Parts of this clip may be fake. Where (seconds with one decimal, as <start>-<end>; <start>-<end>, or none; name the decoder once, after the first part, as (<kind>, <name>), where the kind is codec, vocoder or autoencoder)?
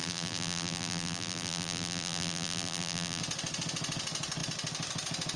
0.0-3.2 (vocoder, BigVGAN v2)